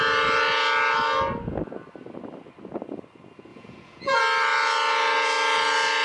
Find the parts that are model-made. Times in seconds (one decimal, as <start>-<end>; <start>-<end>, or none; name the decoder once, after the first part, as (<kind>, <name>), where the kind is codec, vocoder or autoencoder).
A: 3.5-4.2 (vocoder, Vocos)